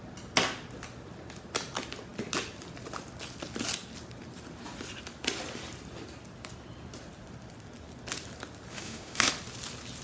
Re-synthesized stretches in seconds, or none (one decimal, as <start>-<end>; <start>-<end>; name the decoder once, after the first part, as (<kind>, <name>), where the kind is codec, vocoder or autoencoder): 8.7-9.3 (autoencoder, DAC-VAE)

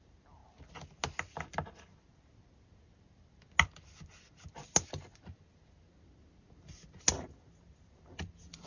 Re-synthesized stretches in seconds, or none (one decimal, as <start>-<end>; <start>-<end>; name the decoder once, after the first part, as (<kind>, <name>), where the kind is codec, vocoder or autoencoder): none

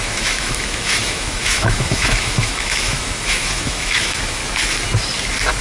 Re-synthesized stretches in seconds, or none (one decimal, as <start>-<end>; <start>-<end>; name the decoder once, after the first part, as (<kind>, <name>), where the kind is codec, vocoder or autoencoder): 0.0-4.4 (autoencoder, DAC-VAE)

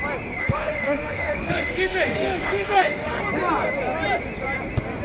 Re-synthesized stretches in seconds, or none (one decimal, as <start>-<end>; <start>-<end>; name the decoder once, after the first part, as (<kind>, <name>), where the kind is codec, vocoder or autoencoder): 0.4-3.2 (autoencoder, DAC-VAE)